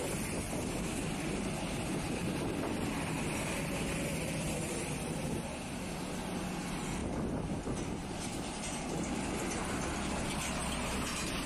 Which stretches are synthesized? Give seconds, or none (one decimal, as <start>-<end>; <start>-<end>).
2.2-5.7; 7.0-7.5